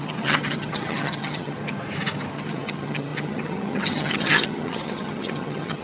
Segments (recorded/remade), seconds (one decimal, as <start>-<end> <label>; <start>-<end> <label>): 0.0-1.6 remade; 1.6-2.3 recorded; 2.3-5.8 remade